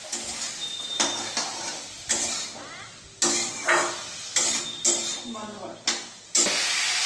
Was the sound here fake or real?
real